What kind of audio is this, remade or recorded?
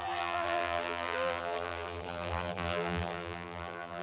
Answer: remade